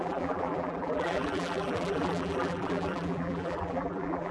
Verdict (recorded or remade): remade